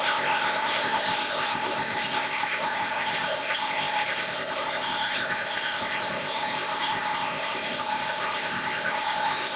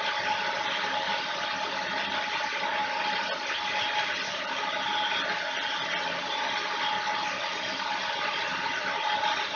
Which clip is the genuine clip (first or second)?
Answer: second